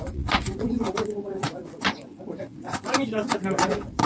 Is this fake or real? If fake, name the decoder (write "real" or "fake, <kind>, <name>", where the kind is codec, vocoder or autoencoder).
fake, vocoder, Vocos